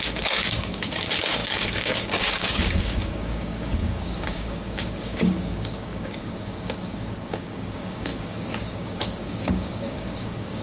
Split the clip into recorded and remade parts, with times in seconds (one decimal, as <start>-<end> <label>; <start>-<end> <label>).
0.0-10.6 remade